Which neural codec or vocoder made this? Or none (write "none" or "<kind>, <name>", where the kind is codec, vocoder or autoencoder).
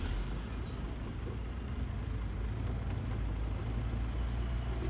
none